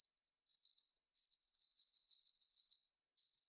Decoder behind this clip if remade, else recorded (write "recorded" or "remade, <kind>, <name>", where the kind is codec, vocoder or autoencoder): remade, codec, SNAC